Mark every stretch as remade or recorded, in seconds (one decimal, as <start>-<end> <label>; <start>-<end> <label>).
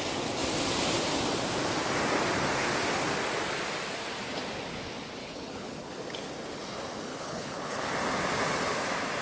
0.0-5.2 recorded; 5.2-5.9 remade; 5.9-7.1 recorded; 7.1-7.9 remade; 7.9-9.2 recorded